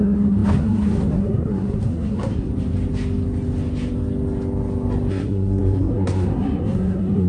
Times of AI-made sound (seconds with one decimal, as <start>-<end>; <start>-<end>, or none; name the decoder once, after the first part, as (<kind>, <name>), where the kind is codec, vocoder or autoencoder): 0.0-2.5 (codec, SNAC); 5.1-7.3